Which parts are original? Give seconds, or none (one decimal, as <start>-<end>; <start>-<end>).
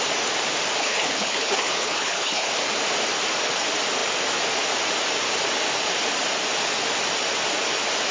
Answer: 0.0-0.8; 2.5-8.1